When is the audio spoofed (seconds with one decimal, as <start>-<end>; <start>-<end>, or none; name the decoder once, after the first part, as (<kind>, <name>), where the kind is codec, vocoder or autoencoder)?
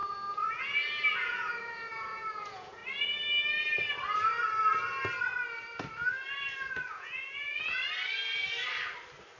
0.0-2.8 (vocoder, Vocos); 6.9-7.8